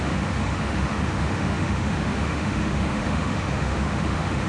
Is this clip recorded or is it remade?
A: remade